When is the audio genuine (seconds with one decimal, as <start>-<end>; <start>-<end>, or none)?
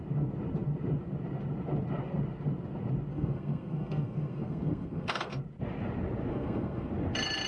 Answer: 0.0-3.1; 5.4-6.3; 6.9-7.5